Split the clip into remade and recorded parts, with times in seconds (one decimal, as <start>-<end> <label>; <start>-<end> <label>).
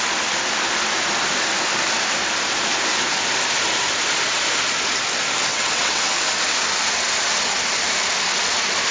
0.0-5.5 recorded; 5.5-6.0 remade; 6.0-8.9 recorded